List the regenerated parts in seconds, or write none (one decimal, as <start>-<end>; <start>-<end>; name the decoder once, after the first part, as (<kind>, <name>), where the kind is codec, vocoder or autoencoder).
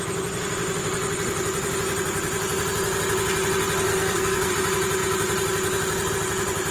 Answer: 3.9-4.5 (codec, SNAC)